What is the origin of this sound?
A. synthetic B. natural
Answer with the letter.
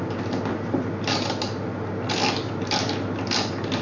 B